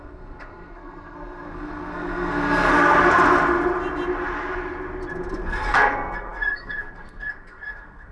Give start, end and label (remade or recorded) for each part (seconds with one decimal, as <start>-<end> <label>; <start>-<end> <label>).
0.0-2.7 remade; 2.7-5.3 recorded; 5.3-8.1 remade